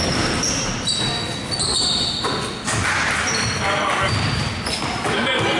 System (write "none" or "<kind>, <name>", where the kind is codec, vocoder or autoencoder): none